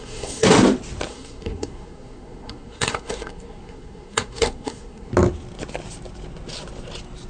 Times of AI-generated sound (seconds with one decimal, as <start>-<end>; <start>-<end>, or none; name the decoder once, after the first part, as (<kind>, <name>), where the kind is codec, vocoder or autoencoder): 0.0-0.5 (codec, SNAC); 1.1-5.1

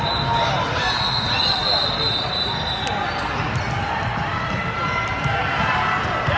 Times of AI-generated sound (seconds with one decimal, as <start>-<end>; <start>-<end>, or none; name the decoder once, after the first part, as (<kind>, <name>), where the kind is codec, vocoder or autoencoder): none

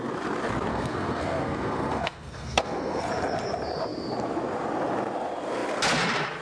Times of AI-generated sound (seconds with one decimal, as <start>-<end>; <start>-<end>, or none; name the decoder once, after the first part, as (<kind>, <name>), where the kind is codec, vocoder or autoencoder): 0.7-3.0 (codec, SNAC)

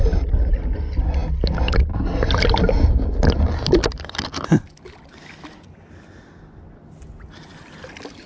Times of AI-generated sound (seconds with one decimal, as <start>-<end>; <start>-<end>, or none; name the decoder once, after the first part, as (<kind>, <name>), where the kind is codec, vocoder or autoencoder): none